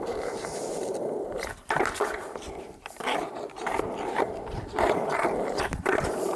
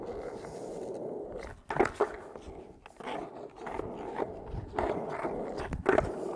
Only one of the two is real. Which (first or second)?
second